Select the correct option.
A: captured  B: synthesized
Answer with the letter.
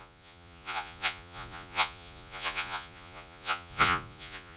B